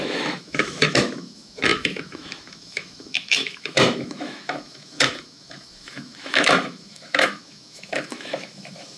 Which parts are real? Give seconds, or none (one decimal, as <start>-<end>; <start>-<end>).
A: none